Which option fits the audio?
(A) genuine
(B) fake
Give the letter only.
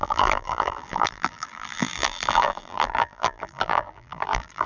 B